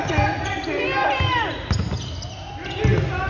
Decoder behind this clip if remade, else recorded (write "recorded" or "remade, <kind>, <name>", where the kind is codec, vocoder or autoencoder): recorded